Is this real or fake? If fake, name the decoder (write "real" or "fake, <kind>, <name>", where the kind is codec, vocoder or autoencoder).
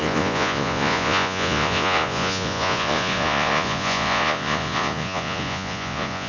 fake, vocoder, Vocos